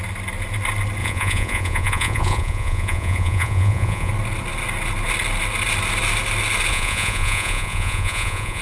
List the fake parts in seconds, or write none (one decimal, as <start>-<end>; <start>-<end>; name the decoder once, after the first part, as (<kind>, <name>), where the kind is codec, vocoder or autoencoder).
1.0-4.1 (vocoder, Vocos); 6.7-8.6